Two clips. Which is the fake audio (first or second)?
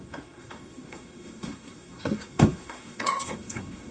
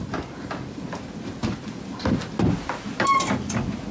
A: first